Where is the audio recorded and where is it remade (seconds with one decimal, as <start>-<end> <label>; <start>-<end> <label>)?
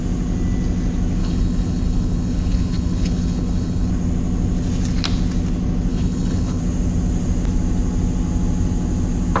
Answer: 0.0-1.2 recorded; 1.2-3.9 remade; 3.9-5.9 recorded; 5.9-6.6 remade; 6.6-9.4 recorded